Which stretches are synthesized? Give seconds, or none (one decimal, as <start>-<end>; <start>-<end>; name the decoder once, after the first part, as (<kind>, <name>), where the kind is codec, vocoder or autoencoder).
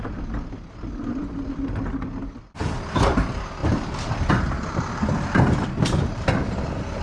none